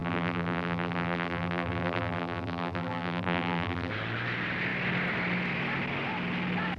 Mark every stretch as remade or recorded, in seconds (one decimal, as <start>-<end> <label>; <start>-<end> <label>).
0.0-3.9 remade; 3.9-6.8 recorded